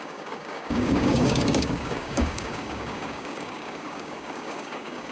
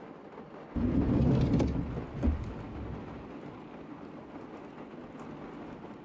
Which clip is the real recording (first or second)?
second